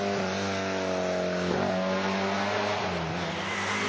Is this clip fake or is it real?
real